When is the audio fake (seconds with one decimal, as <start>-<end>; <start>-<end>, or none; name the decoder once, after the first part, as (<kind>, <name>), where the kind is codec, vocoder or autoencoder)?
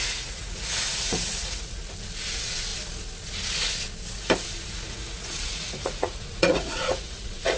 0.0-1.8 (vocoder, Vocos); 2.3-2.7; 4.7-7.6